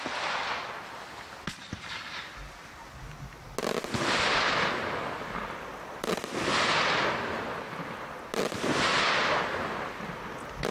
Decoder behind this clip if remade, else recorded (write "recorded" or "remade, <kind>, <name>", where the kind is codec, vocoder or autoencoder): recorded